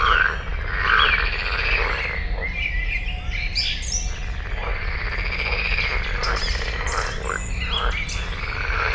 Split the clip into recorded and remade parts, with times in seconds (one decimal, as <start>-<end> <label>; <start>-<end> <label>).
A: 0.0-8.9 recorded